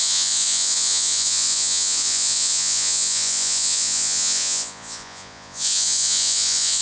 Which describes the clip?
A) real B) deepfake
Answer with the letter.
B